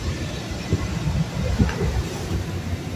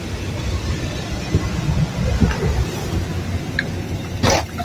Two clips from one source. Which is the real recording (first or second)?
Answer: second